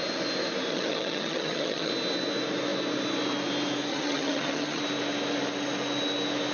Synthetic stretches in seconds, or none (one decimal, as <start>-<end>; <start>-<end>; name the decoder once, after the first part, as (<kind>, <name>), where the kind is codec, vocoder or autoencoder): 0.7-1.9 (vocoder, HiFi-GAN); 3.9-4.8